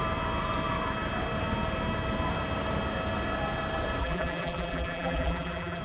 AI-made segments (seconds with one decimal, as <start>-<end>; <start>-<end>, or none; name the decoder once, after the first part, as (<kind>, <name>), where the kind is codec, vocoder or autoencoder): 4.0-5.8 (vocoder, BigVGAN v2)